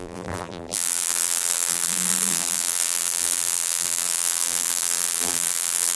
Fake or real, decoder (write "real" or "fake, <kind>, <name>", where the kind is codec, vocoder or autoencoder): fake, vocoder, BigVGAN v2